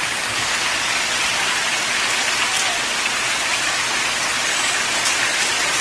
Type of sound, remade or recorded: recorded